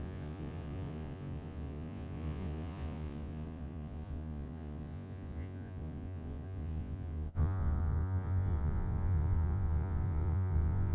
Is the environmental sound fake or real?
fake